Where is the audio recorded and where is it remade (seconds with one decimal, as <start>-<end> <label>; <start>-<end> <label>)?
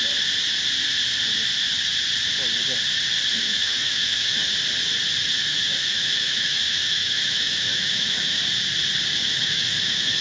0.0-3.3 recorded; 3.3-4.5 remade; 4.5-5.5 recorded; 5.5-8.4 remade; 8.4-9.2 recorded; 9.2-10.2 remade